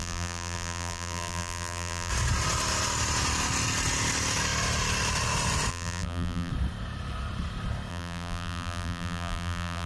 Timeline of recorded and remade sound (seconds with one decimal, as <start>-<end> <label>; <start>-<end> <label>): 0.0-2.1 remade; 2.1-5.7 recorded; 5.7-6.5 remade; 6.5-7.9 recorded; 7.9-9.9 remade